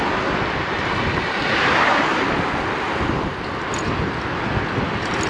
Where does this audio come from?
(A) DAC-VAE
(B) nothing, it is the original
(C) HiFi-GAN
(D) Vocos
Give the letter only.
B